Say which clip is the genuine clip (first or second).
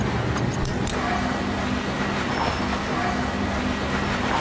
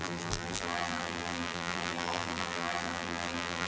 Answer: first